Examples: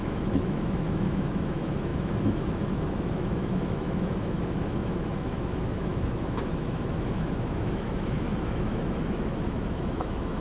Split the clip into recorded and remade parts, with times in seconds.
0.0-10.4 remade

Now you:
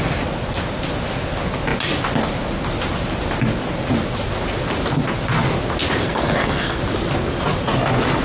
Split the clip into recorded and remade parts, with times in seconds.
0.0-6.0 recorded; 6.0-6.8 remade; 6.8-8.2 recorded

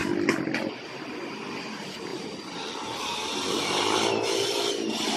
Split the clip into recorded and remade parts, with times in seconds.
0.0-5.2 recorded

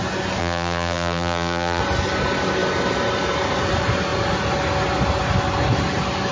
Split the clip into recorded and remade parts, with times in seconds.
0.0-0.4 recorded; 0.4-1.8 remade; 1.8-6.3 recorded

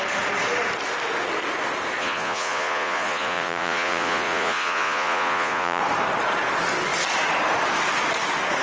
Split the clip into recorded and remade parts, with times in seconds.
0.0-2.0 recorded; 2.0-5.8 remade; 5.8-8.6 recorded